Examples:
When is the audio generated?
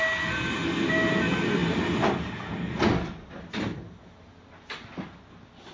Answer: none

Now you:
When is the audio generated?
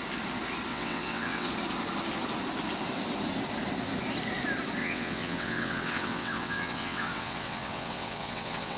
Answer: 0.7-1.5; 4.8-8.8